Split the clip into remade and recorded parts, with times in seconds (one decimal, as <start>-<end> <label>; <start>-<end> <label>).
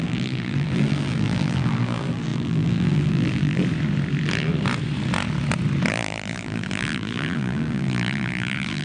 0.0-3.6 remade; 3.6-5.9 recorded; 5.9-8.8 remade